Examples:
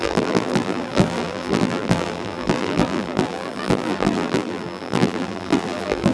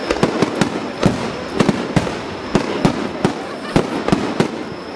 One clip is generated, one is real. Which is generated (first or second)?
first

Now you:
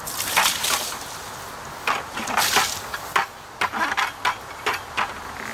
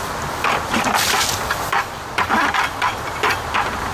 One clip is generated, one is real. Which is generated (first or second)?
second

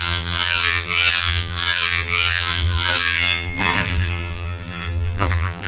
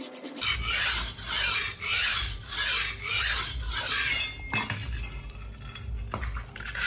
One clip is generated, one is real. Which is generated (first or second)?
first